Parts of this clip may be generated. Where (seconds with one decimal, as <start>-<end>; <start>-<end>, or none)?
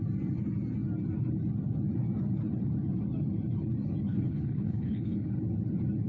4.0-5.3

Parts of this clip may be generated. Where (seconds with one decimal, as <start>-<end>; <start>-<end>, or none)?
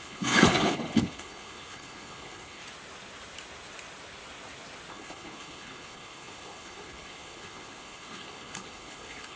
0.0-2.6; 4.9-9.4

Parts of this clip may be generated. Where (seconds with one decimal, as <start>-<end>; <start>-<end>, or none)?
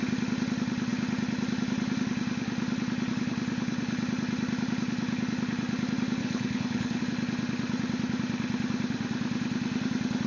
6.2-7.0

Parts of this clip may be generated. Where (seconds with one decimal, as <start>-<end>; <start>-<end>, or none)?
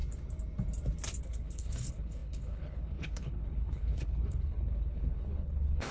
1.2-5.9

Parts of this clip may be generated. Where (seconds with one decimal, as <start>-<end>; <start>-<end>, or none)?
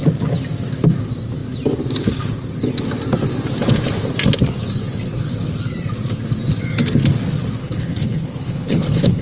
7.6-9.2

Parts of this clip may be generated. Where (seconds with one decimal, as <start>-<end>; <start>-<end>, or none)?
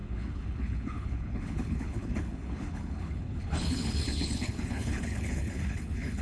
0.0-6.2